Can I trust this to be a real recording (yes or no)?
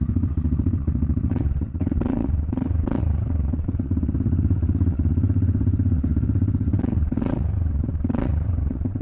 no